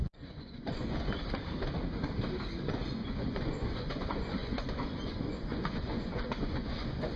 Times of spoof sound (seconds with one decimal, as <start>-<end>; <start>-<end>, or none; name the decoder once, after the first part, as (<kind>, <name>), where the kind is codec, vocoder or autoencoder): 0.0-1.2 (vocoder, Vocos); 2.6-7.2

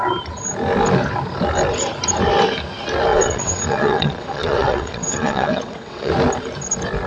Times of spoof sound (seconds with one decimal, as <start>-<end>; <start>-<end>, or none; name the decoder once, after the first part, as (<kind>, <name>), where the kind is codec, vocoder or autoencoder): 3.1-6.1 (vocoder, WaveNeXt)

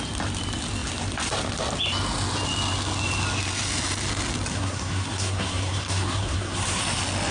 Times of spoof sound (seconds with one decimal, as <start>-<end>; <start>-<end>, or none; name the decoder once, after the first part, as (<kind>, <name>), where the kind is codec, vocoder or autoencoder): 4.5-6.8 (codec, SNAC)

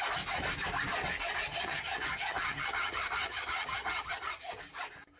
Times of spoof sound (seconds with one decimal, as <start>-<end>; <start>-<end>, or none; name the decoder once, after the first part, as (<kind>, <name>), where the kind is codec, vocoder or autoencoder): 1.5-4.6 (vocoder, HiFi-GAN)

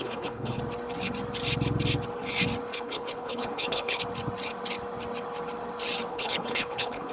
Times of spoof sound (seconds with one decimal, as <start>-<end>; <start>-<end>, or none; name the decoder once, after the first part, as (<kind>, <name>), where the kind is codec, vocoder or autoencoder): 0.0-0.6 (codec, HILCodec); 2.7-4.0; 6.1-7.1

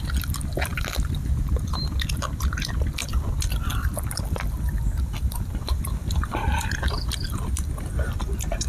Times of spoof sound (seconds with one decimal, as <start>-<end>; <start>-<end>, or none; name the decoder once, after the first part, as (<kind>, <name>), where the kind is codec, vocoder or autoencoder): 3.0-7.5 (vocoder, BigVGAN v2)